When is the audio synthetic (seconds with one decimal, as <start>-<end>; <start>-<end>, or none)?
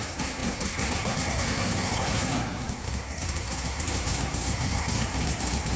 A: 0.0-5.8